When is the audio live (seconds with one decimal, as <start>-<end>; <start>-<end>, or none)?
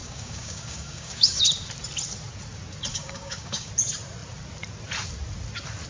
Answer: 1.4-2.9; 3.7-5.9